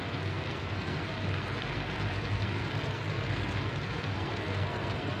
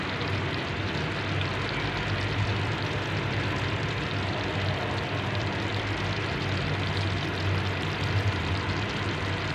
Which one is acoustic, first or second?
second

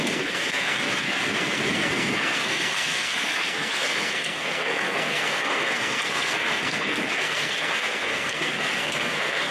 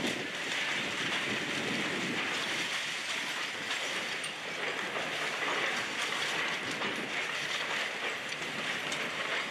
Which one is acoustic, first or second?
second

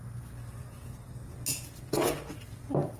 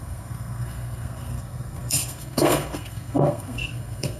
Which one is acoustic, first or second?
first